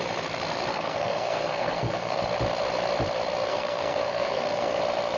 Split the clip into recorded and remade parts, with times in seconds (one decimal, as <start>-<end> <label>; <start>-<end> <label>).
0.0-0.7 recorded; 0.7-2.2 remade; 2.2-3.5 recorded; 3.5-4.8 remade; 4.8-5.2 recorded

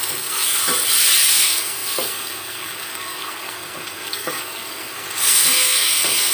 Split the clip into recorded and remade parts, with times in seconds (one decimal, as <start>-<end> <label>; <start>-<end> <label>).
0.0-0.6 remade; 0.6-1.3 recorded; 1.3-6.3 remade

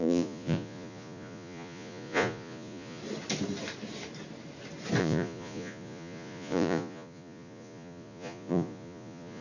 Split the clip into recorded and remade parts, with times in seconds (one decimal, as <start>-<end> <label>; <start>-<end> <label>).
0.0-3.0 remade; 3.0-5.0 recorded; 5.0-9.4 remade

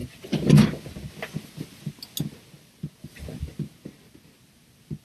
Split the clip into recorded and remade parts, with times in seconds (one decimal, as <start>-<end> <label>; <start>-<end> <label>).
0.0-5.0 recorded